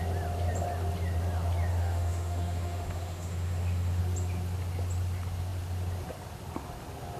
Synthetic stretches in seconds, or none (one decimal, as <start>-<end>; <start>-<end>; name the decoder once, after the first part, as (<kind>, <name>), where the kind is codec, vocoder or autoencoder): 1.7-4.0 (autoencoder, DAC-VAE)